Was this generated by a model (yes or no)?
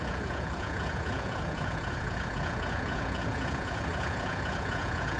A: yes